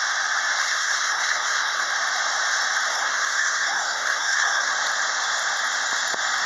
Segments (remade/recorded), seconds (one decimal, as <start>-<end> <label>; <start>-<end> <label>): 0.0-0.6 recorded; 0.6-1.9 remade; 1.9-2.9 recorded; 2.9-4.7 remade; 4.7-6.5 recorded